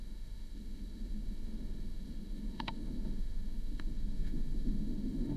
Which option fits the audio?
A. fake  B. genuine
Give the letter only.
A